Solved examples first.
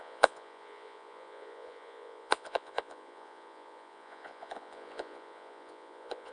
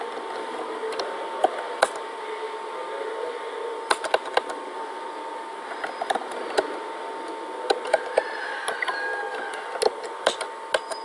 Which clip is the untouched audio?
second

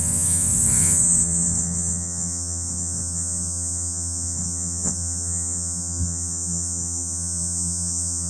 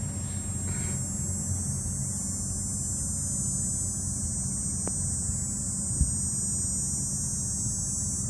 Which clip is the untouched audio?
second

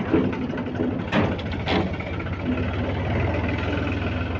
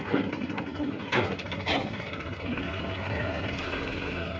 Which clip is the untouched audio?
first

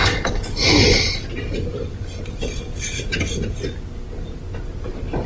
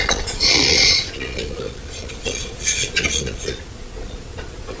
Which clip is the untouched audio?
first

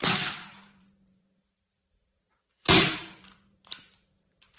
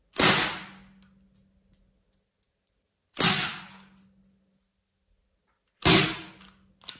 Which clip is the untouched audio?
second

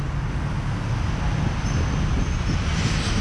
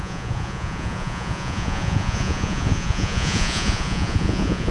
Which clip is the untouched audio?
first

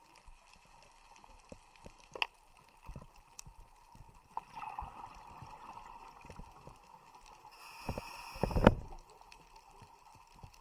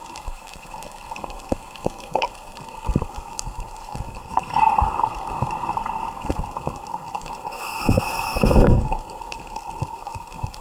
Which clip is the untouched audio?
first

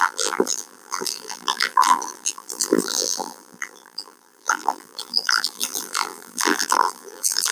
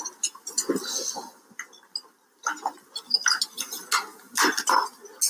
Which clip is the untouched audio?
second